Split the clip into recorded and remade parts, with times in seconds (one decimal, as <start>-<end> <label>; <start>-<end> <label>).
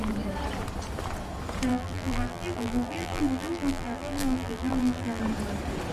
0.0-1.7 recorded; 1.7-5.2 remade; 5.2-5.9 recorded